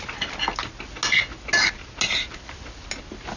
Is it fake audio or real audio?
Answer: real